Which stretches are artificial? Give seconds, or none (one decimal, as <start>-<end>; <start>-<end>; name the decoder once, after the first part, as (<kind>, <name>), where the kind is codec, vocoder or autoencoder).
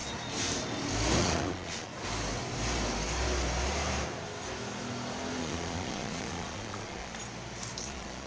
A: 1.2-1.9 (vocoder, Vocos); 5.4-7.1; 7.8-8.3